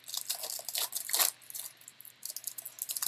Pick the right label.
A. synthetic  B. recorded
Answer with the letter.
B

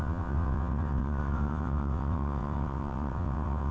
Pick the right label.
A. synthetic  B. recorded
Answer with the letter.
A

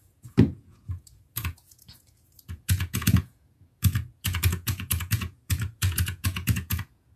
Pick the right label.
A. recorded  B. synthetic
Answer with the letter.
B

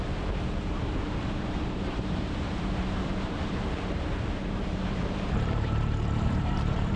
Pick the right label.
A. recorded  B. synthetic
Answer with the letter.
B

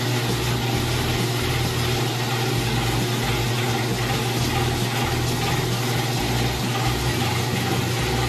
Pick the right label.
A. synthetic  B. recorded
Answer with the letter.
B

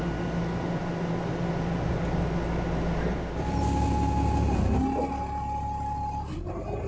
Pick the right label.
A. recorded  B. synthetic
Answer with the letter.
A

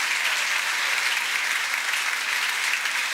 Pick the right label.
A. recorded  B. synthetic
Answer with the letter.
A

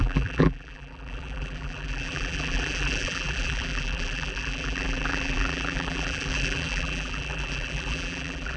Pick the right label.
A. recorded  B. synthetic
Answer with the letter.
B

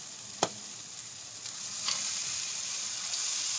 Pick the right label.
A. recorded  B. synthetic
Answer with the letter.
B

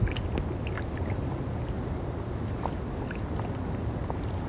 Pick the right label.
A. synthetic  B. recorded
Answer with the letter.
B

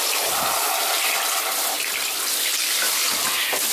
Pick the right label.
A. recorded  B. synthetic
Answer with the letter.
A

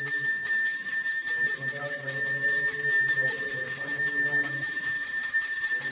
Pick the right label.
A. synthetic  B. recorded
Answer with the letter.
A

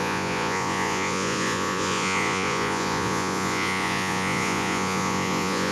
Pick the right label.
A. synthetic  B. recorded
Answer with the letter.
A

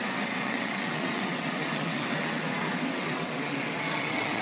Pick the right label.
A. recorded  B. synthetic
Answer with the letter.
B